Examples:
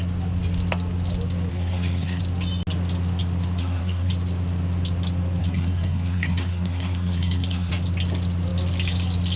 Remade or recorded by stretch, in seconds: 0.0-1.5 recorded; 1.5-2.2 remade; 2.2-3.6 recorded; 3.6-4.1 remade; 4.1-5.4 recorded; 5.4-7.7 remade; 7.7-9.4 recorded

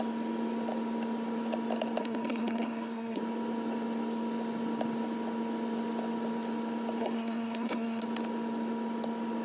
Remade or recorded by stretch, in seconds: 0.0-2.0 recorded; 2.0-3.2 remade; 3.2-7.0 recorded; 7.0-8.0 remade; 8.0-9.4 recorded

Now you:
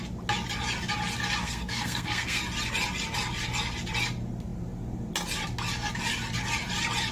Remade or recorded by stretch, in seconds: 0.0-1.4 recorded; 1.4-2.4 remade; 2.4-7.1 recorded

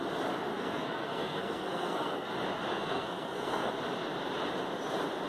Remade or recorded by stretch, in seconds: 0.0-0.5 recorded; 0.5-2.3 remade; 2.3-2.7 recorded; 2.7-3.7 remade; 3.7-5.3 recorded

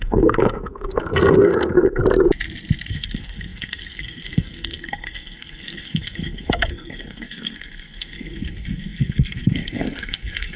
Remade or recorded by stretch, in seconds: 0.0-2.0 remade; 2.0-2.9 recorded; 2.9-10.6 remade